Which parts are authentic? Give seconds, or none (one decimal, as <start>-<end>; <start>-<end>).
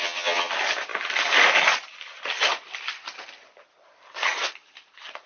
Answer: 0.5-5.3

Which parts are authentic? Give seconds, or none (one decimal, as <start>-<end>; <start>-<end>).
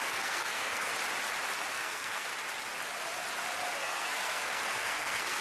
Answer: 0.9-1.7; 2.3-3.8